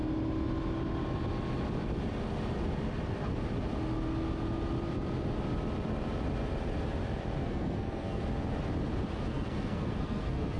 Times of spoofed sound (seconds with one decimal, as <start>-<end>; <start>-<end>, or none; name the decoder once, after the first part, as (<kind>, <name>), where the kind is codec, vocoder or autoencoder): 7.4-8.2 (codec, SNAC); 9.3-10.6